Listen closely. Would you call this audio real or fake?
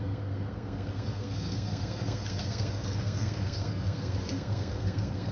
fake